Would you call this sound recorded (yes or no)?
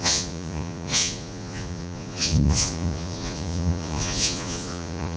no